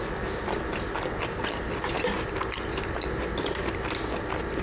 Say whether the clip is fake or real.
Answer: real